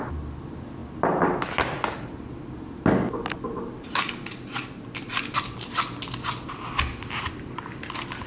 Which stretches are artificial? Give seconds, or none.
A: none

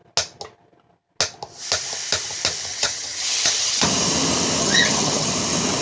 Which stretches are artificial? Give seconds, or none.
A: 2.7-3.8 (vocoder, HiFi-GAN); 4.6-5.3

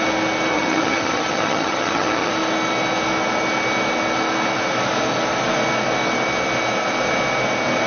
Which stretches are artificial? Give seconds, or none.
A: 0.5-2.3 (vocoder, HiFi-GAN)

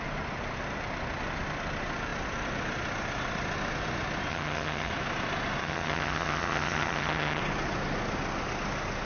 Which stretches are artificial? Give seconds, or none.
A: 4.3-4.9 (vocoder, HiFi-GAN); 5.6-7.4

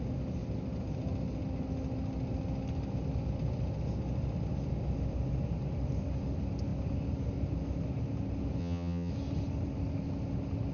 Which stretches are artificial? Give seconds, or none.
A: 8.6-9.1 (vocoder, HiFi-GAN)

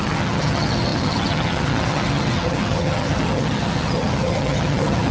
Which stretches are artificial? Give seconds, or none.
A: 0.0-5.1 (vocoder, HiFi-GAN)

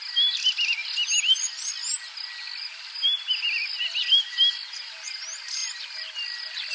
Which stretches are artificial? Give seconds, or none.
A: none